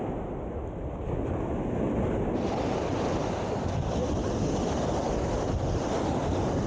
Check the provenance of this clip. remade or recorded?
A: recorded